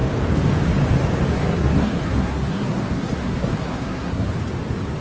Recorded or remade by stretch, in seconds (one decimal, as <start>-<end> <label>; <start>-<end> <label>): 0.0-1.3 recorded; 1.3-4.3 remade; 4.3-5.0 recorded